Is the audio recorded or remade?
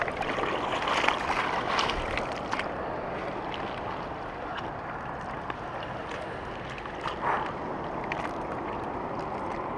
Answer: recorded